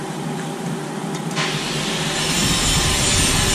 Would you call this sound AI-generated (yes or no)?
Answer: no